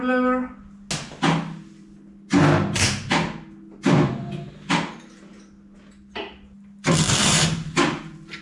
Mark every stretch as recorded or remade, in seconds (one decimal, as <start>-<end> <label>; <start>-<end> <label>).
0.0-7.2 recorded; 7.2-7.8 remade; 7.8-8.4 recorded